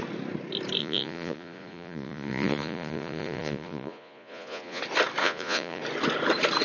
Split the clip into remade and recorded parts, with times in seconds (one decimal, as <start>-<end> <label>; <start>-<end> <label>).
0.0-0.8 recorded; 0.8-4.8 remade; 4.8-5.2 recorded; 5.2-5.8 remade; 5.8-6.6 recorded